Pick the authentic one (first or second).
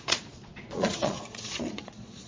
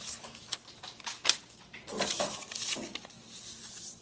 second